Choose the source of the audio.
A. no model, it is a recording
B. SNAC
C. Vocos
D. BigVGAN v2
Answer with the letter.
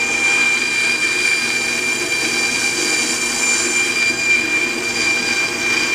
A